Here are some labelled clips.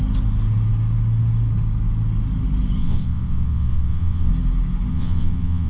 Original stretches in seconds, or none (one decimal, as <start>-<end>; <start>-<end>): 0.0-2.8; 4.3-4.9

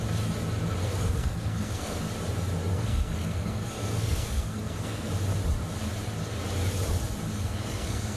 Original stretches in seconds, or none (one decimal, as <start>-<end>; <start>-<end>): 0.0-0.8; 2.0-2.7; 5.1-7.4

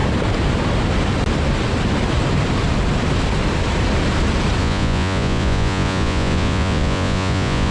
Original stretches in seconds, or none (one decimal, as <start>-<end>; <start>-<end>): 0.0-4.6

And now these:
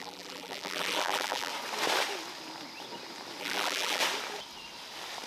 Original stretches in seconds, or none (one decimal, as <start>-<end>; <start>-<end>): 1.5-3.4; 4.0-5.3